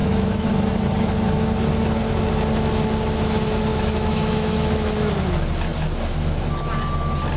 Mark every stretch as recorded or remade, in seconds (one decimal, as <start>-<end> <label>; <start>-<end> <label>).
0.0-0.5 remade; 0.5-3.7 recorded; 3.7-5.1 remade; 5.1-7.4 recorded